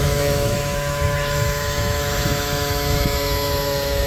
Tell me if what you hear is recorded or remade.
remade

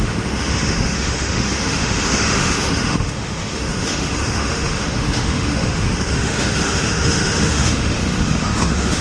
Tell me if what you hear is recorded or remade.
remade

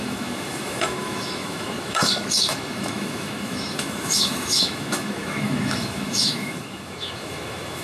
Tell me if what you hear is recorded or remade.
remade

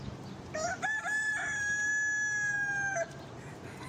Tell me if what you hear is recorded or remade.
recorded